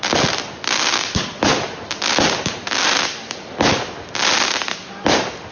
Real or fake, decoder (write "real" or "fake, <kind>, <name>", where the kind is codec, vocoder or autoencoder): real